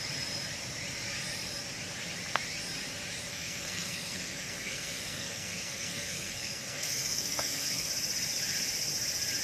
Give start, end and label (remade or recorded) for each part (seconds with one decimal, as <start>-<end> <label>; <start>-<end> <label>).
0.0-3.3 recorded; 3.3-7.9 remade; 7.9-9.4 recorded